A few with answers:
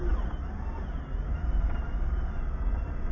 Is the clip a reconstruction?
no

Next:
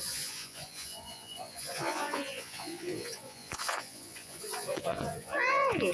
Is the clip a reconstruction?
yes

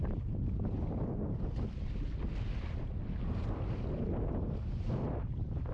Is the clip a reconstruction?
no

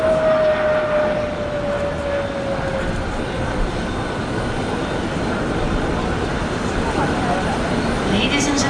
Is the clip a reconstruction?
no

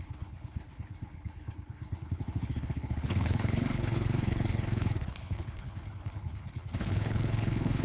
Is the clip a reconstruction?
yes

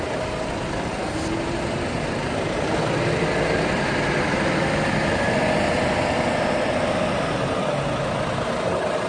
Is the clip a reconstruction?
no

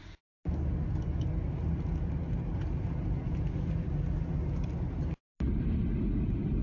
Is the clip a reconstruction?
no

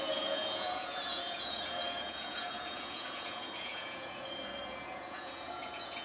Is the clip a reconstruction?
yes